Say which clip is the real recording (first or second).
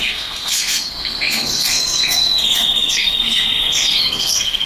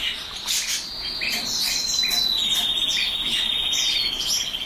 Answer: second